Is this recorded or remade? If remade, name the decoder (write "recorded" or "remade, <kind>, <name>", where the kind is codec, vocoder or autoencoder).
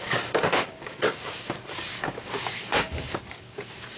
remade, codec, DAC